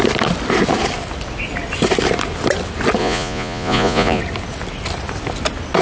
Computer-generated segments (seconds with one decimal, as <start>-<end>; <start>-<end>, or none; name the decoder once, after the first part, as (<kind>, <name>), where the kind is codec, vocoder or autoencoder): 3.0-4.2 (vocoder, Vocos)